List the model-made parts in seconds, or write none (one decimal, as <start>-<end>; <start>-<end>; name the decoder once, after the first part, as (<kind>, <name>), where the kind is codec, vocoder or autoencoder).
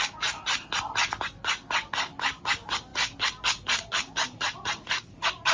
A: none